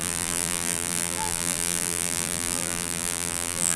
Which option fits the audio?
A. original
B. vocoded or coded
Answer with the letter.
B